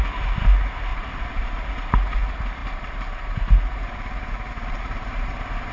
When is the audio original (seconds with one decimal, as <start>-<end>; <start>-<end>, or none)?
0.0-0.9; 1.7-2.6